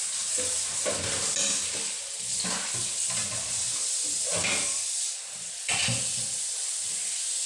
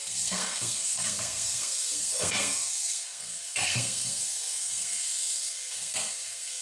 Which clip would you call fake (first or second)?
second